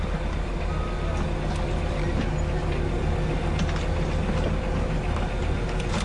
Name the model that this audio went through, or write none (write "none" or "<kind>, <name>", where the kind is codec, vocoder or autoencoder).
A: none